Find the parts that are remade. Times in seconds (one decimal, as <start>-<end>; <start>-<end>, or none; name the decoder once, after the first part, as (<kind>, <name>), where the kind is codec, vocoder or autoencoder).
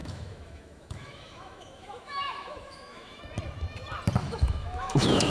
0.0-3.2 (autoencoder, DAC-VAE); 4.2-5.3